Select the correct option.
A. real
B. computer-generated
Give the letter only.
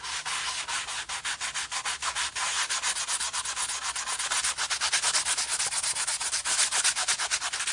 A